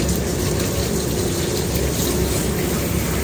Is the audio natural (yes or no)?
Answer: yes